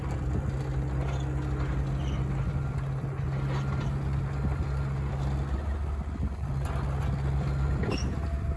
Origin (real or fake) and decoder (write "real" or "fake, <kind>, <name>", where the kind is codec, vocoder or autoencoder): real